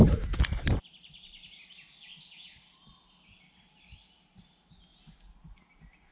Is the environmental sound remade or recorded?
recorded